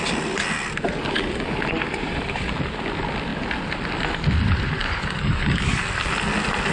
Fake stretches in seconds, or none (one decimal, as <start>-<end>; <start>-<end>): 4.8-5.8